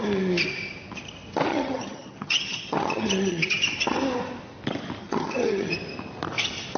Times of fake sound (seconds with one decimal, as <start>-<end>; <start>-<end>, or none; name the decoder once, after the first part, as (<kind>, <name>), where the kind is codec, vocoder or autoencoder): 1.5-3.6 (vocoder, HiFi-GAN); 5.0-5.7